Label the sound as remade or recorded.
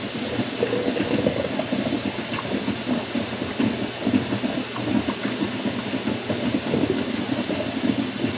recorded